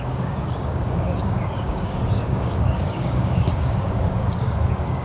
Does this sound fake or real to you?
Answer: fake